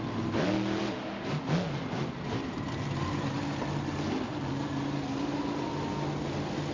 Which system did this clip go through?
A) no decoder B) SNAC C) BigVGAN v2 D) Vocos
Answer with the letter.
A